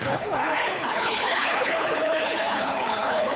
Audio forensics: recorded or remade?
remade